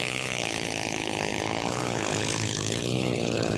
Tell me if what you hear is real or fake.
fake